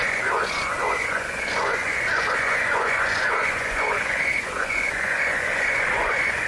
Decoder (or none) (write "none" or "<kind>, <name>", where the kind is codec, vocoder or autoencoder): vocoder, Vocos